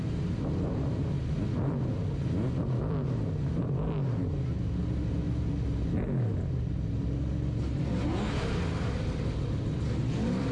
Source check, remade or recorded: recorded